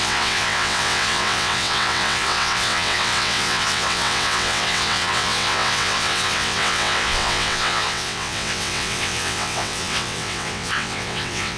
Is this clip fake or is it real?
fake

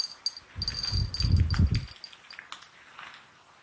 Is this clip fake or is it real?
real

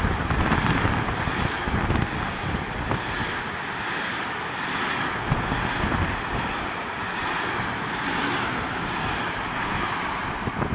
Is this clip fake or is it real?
real